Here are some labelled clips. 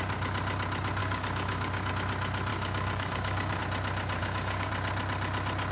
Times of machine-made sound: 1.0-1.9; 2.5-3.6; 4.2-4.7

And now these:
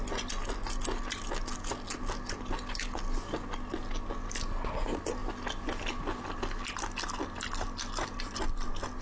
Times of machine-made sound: none

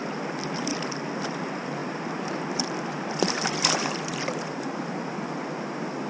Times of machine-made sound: none

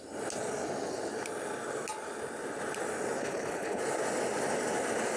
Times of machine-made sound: 3.2-3.8

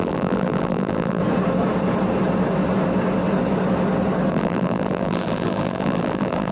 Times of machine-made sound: 0.0-1.2; 4.3-6.5

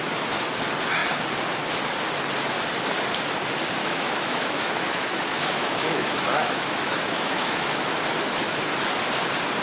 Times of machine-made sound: 3.8-7.7

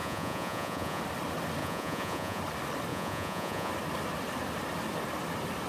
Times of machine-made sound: 0.0-1.0; 1.6-2.4; 2.9-3.7

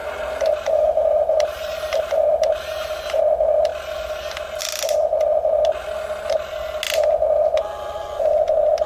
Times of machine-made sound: 0.0-3.2